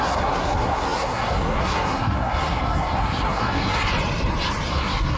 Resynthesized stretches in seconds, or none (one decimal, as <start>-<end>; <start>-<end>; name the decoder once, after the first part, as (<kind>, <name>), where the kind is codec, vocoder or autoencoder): 0.0-3.9 (codec, SNAC); 4.7-5.2